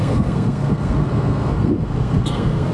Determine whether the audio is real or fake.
fake